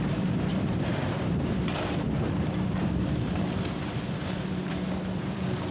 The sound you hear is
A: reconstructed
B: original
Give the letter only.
A